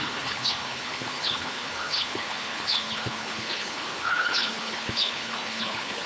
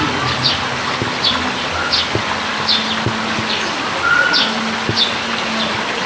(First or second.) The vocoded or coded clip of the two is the first